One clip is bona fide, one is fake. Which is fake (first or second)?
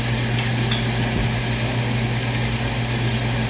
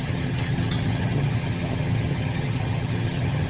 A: second